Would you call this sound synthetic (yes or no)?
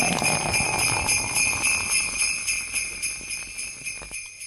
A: no